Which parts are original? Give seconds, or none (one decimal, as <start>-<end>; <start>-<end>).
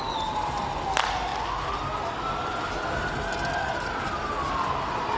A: 0.0-5.2